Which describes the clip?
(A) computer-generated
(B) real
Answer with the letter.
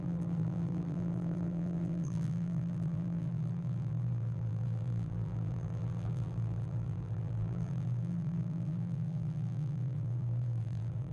A